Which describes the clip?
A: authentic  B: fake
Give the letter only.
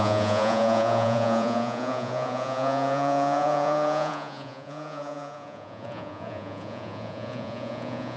B